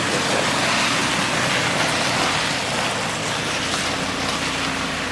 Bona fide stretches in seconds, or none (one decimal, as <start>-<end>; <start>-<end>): 0.0-5.1